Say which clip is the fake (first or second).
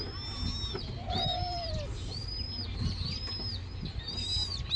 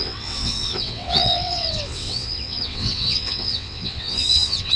second